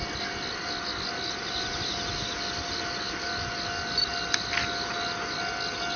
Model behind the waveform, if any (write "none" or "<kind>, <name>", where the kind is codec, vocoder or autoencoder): none